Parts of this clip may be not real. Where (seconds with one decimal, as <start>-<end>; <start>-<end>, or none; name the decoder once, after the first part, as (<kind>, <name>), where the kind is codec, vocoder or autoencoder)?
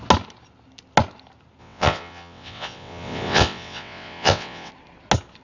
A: 1.6-4.7 (vocoder, WaveNeXt)